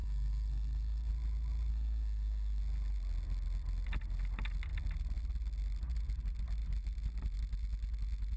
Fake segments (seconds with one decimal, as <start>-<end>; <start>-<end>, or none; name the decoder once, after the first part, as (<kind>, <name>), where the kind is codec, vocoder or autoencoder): 0.0-1.1 (codec, SNAC); 1.7-2.6